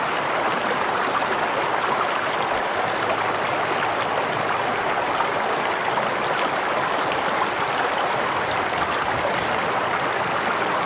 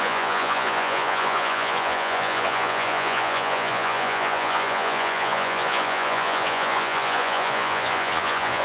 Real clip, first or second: first